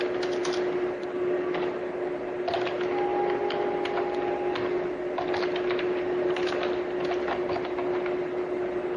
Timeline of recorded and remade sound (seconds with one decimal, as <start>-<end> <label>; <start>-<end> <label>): 0.0-9.0 recorded